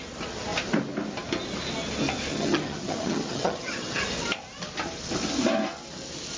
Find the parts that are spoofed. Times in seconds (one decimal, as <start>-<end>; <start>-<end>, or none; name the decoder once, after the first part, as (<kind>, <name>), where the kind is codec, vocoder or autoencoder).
2.3-4.0 (vocoder, HiFi-GAN)